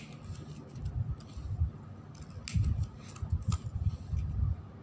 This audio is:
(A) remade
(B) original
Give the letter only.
B